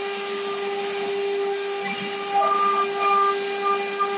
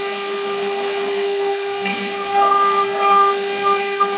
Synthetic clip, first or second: second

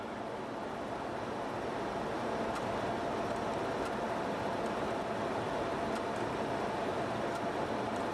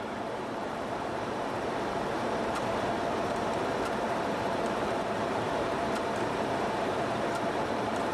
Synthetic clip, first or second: second